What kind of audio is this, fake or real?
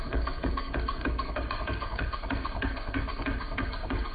fake